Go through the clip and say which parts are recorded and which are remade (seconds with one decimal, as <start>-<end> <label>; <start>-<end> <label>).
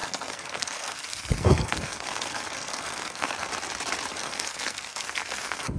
0.0-3.5 remade; 3.5-4.1 recorded; 4.1-5.8 remade